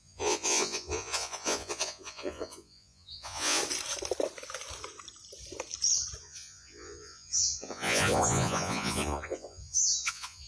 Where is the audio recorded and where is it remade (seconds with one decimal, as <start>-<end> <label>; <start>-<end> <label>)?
0.0-3.6 remade; 3.6-6.2 recorded; 6.2-10.5 remade

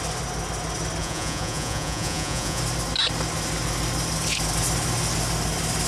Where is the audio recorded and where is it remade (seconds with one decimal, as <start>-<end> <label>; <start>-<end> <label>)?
0.0-1.0 recorded; 1.0-2.6 remade; 2.6-5.9 recorded

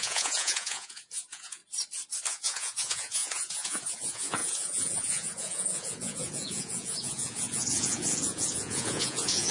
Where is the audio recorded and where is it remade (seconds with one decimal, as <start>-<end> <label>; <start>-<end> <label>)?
0.0-1.6 remade; 1.6-2.3 recorded; 2.3-9.5 remade

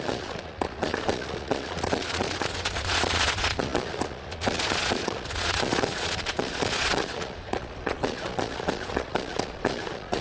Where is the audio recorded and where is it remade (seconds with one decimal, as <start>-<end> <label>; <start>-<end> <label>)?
0.0-10.2 remade